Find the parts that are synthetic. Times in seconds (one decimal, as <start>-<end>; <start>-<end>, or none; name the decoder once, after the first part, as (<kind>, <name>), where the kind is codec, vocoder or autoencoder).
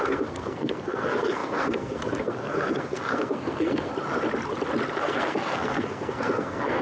0.0-3.9 (codec, SNAC); 4.9-6.8